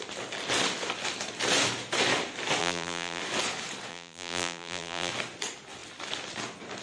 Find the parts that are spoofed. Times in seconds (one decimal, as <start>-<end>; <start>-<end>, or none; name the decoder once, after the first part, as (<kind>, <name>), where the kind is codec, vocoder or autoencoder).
2.6-3.2 (vocoder, BigVGAN v2); 3.9-5.1